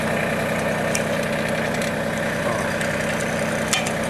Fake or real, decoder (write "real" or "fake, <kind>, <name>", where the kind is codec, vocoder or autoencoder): real